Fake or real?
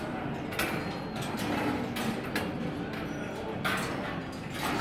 real